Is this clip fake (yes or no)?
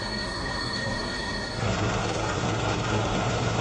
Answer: yes